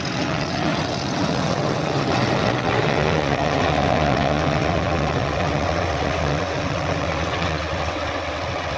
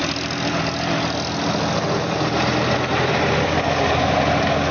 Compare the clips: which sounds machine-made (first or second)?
first